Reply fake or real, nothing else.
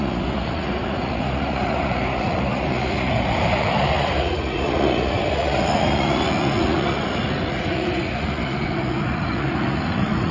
fake